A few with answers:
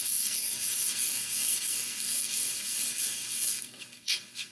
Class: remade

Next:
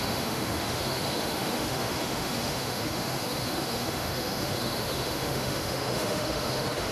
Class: remade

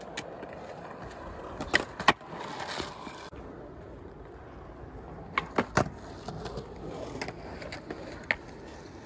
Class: recorded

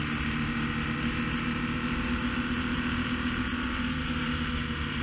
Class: recorded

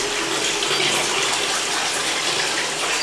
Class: recorded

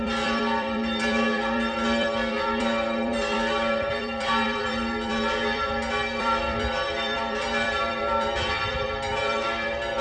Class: remade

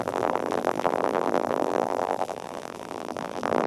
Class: remade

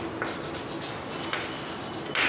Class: recorded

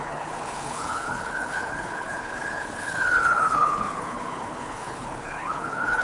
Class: remade